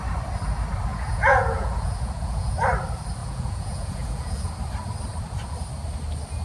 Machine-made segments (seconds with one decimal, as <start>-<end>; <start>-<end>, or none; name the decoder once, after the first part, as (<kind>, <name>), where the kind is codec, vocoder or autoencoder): 0.9-2.5 (vocoder, Vocos); 3.2-4.5